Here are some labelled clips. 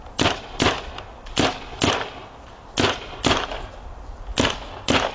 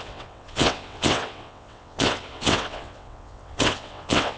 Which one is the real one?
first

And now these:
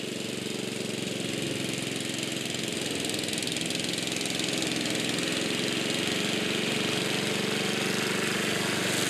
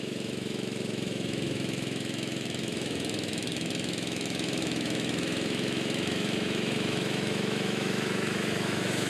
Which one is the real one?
first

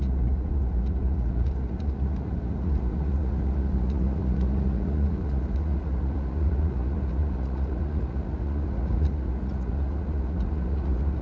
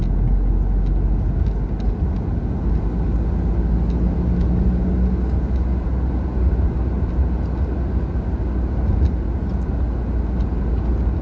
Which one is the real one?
second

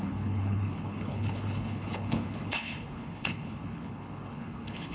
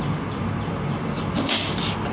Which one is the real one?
second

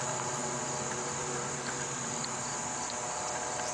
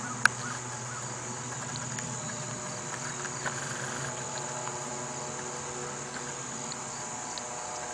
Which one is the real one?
second